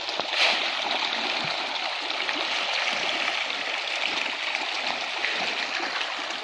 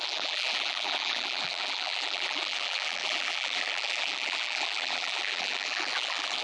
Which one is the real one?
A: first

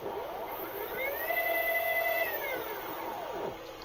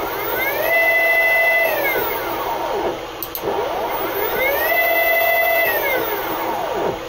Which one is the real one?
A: second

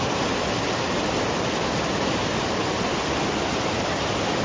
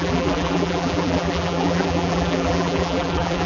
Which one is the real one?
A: first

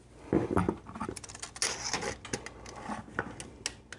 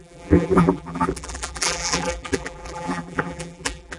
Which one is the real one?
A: first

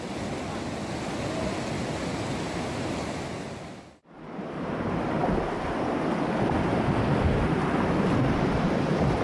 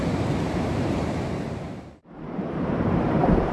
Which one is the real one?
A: first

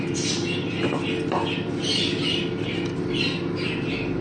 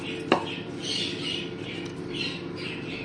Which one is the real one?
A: first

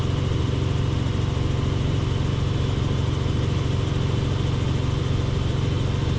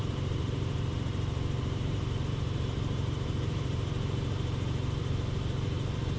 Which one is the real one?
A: first